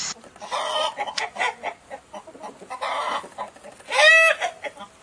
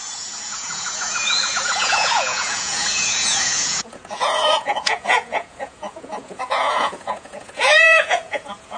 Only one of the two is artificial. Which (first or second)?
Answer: second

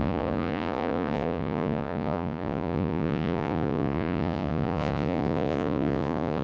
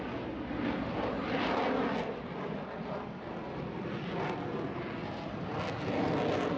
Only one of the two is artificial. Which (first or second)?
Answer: first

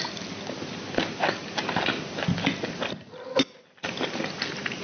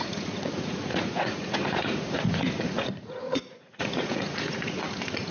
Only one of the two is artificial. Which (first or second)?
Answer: second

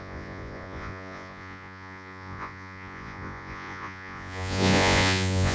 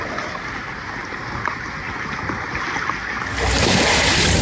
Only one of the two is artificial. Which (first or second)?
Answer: first